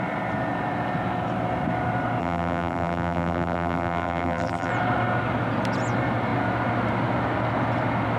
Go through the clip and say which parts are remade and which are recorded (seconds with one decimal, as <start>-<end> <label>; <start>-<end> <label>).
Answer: 0.0-2.2 recorded; 2.2-4.7 remade; 4.7-8.2 recorded